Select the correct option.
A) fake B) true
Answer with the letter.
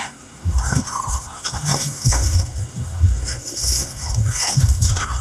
A